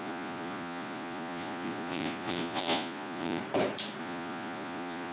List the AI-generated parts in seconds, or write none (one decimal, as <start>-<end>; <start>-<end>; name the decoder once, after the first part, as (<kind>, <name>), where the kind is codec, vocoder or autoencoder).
0.0-3.4 (vocoder, Vocos); 4.0-5.1